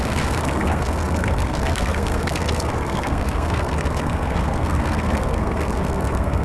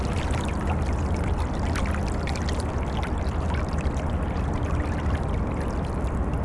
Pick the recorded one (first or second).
second